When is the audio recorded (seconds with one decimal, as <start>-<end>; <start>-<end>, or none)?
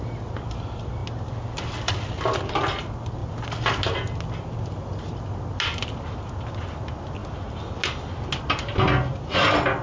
0.0-9.8